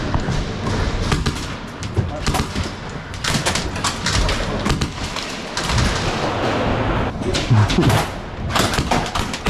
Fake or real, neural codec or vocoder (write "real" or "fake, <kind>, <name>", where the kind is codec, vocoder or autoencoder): real